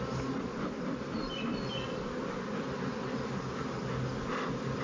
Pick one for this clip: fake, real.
real